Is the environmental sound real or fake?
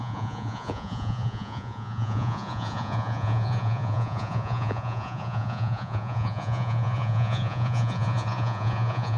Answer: fake